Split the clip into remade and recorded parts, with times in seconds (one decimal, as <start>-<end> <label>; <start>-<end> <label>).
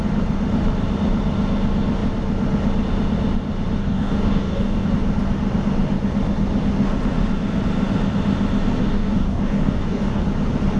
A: 0.0-3.8 recorded; 3.8-4.9 remade; 4.9-8.8 recorded; 8.8-10.2 remade; 10.2-10.8 recorded